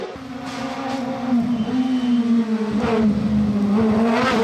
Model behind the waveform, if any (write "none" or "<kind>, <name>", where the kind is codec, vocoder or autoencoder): none